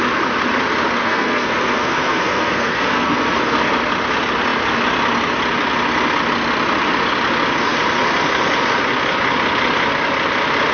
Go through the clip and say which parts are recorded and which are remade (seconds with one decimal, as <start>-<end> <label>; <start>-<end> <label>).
0.0-1.0 recorded; 1.0-3.4 remade; 3.4-10.7 recorded